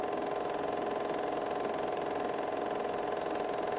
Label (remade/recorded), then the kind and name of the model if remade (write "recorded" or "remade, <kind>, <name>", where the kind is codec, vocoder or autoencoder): recorded